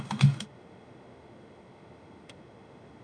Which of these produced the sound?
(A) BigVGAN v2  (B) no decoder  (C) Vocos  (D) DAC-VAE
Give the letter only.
D